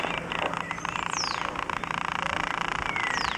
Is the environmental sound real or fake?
real